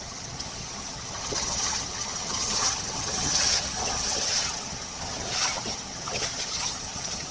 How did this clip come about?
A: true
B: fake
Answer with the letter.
B